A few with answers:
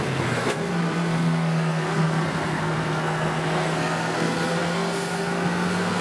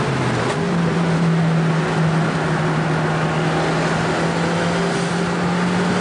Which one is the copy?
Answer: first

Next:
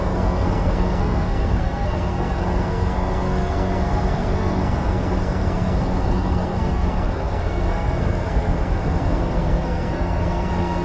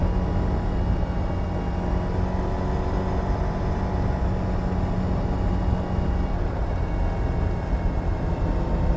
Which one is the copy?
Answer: first